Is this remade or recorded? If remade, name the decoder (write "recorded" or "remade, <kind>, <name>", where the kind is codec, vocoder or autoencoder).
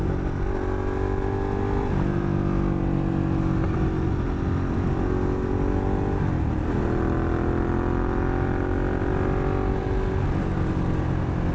recorded